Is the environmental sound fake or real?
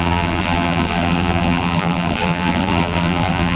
fake